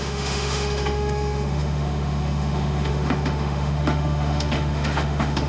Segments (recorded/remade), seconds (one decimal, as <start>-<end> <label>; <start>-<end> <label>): 0.0-5.5 remade